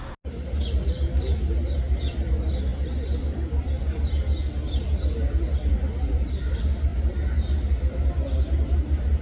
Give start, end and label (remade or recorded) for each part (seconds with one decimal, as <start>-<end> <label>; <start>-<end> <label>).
0.0-9.2 recorded

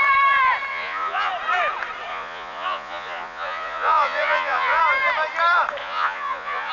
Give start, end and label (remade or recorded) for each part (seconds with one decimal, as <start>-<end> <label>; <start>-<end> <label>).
0.0-0.7 recorded; 0.7-1.3 remade; 1.3-2.1 recorded; 2.1-4.8 remade; 4.8-5.8 recorded; 5.8-6.7 remade